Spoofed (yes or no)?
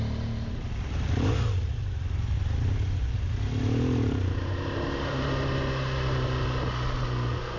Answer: no